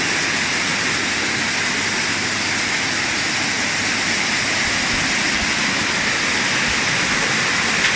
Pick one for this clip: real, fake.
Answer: real